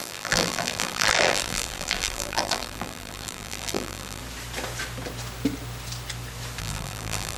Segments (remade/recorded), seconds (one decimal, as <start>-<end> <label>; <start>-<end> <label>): 0.0-4.2 remade; 4.2-6.6 recorded; 6.6-7.4 remade